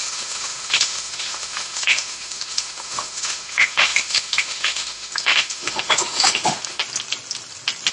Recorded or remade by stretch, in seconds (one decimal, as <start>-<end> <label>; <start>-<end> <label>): 0.0-6.8 remade; 6.8-7.9 recorded

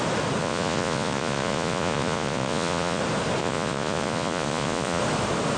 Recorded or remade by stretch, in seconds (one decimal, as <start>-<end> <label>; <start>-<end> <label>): 0.0-0.4 recorded; 0.4-3.0 remade; 3.0-3.4 recorded; 3.4-5.0 remade; 5.0-5.6 recorded

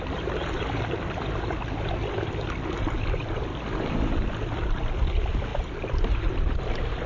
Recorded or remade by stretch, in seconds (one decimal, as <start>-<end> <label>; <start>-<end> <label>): 0.0-7.1 recorded

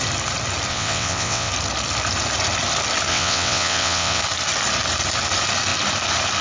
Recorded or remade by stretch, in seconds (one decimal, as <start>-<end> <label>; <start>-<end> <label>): 0.0-0.7 recorded; 0.7-1.5 remade; 1.5-3.1 recorded; 3.1-4.2 remade; 4.2-6.4 recorded